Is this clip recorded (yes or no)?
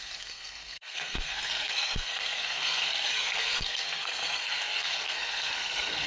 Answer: no